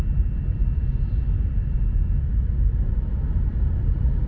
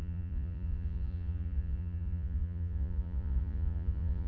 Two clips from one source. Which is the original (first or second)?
first